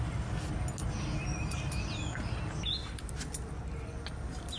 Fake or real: real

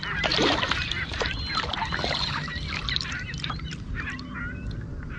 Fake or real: real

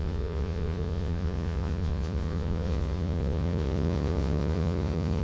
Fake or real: fake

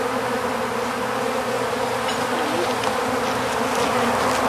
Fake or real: real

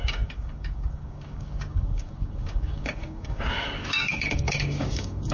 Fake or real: fake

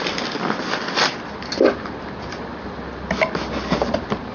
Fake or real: real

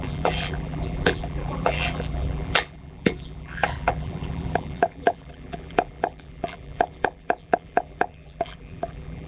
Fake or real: fake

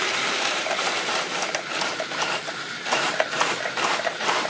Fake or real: fake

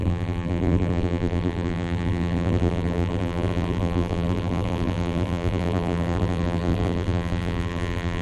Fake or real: fake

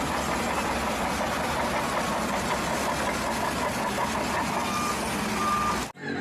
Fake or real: real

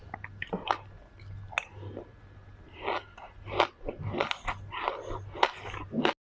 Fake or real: real